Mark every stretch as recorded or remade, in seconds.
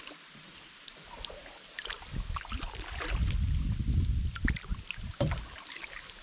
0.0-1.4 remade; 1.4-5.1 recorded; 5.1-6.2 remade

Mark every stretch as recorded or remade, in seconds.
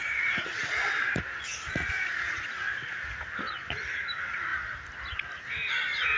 0.0-6.2 recorded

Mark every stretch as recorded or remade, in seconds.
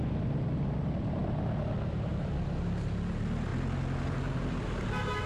0.0-5.3 recorded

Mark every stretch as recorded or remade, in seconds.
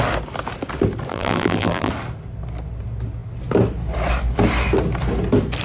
0.0-1.1 recorded; 1.1-1.9 remade; 1.9-5.6 recorded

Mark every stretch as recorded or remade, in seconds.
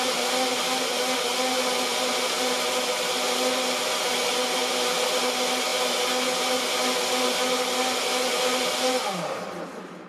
0.0-10.1 recorded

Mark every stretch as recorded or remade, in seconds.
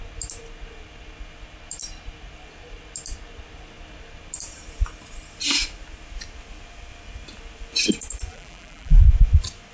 0.0-8.3 recorded; 8.3-9.0 remade; 9.0-9.7 recorded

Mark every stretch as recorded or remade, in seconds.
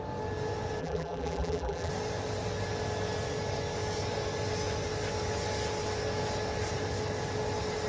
0.0-0.8 recorded; 0.8-1.9 remade; 1.9-7.9 recorded